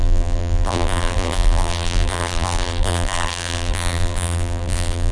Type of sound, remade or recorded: remade